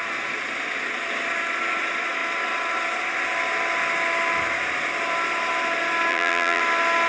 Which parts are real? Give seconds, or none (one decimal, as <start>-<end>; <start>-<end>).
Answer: 0.0-6.1; 6.6-7.1